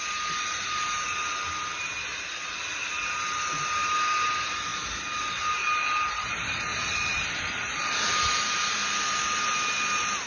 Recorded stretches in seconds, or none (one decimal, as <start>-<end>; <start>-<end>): 0.0-2.1; 2.9-6.7; 8.1-10.3